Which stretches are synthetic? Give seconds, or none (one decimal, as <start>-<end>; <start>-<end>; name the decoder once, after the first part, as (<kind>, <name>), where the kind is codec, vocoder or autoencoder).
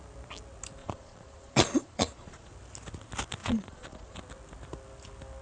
0.8-2.5 (vocoder, Vocos); 3.4-4.2